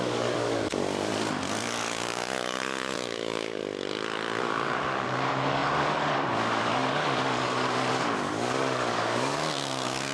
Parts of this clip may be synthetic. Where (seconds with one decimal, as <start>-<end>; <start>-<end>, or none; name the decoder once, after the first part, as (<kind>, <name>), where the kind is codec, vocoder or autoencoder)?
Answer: 0.0-1.1 (codec, DAC); 1.6-3.6; 4.4-10.1